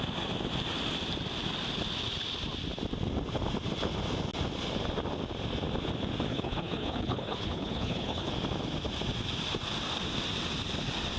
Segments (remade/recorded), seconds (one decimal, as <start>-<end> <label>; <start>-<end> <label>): 0.0-6.3 recorded; 6.3-8.3 remade; 8.3-11.2 recorded